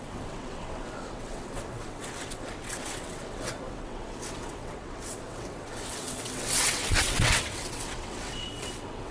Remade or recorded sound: remade